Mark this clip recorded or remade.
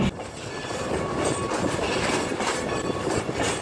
remade